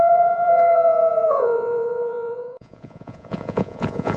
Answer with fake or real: fake